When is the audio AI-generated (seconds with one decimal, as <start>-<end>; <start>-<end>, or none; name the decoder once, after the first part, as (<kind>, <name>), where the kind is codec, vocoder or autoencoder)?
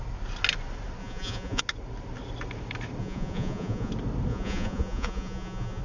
1.0-1.6 (vocoder, Vocos); 3.0-3.9; 4.3-5.8